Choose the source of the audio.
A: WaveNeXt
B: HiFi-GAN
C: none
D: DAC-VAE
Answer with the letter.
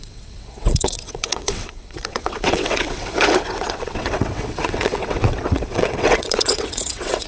A